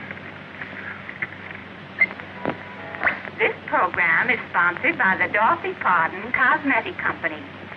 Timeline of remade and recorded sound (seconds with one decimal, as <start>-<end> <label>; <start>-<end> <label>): 0.0-1.6 recorded; 1.6-2.2 remade; 2.2-6.2 recorded; 6.2-7.3 remade; 7.3-7.8 recorded